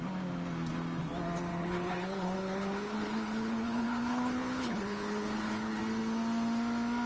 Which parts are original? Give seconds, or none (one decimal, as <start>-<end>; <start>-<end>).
0.0-1.5; 5.8-7.1